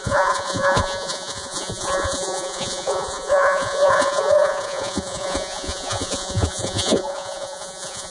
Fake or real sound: fake